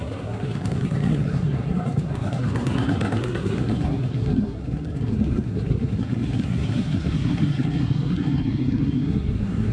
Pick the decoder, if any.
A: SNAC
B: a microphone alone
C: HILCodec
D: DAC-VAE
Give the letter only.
A